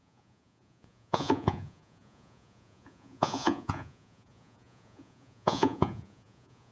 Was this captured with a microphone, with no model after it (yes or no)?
no